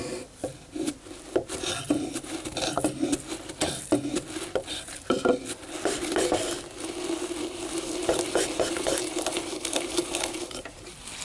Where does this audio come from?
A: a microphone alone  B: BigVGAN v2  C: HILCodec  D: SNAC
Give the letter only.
A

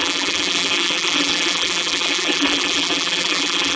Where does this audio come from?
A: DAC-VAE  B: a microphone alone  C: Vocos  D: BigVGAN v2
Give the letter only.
D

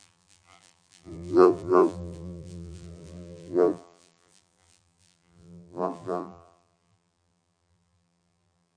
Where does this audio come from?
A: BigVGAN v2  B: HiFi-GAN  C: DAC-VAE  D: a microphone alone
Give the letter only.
A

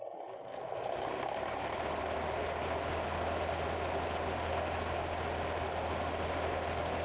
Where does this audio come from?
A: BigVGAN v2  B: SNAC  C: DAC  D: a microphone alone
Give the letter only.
D